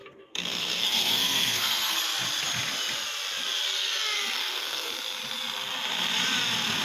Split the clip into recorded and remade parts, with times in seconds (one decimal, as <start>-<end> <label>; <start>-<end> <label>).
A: 0.0-2.0 remade; 2.0-4.4 recorded; 4.4-4.9 remade; 4.9-6.8 recorded